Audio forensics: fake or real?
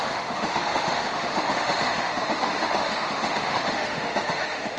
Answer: fake